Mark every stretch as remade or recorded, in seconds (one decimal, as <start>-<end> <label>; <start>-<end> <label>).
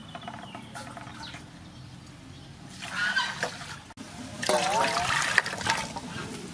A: 0.0-6.5 recorded